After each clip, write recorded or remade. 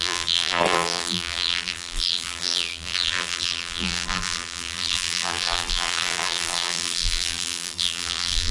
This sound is remade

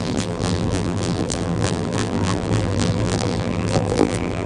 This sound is remade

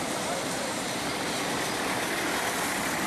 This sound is remade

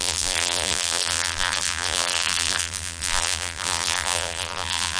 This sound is remade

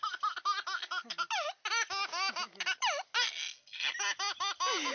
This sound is recorded